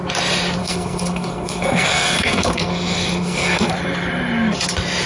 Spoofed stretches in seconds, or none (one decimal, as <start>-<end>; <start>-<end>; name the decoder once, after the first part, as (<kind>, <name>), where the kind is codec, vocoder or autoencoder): 0.6-3.7 (codec, SNAC)